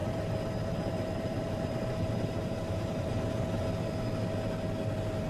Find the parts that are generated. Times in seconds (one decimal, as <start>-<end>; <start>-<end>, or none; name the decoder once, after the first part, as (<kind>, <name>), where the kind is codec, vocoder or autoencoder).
0.0-3.2 (vocoder, BigVGAN v2)